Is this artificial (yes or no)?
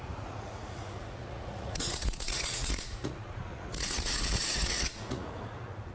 yes